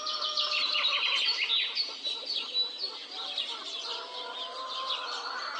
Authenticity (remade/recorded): recorded